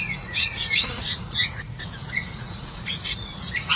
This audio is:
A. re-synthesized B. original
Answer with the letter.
A